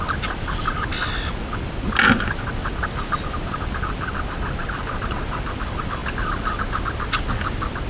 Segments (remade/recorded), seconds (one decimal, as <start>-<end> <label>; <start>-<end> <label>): 0.0-7.9 recorded